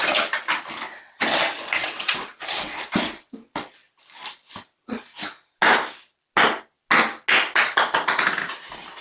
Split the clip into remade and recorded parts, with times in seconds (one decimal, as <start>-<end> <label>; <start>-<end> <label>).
0.0-1.8 recorded; 1.8-2.8 remade; 2.8-9.0 recorded